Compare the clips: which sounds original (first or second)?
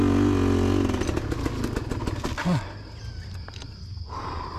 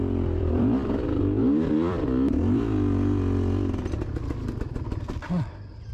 first